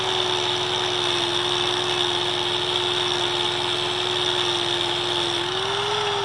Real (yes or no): yes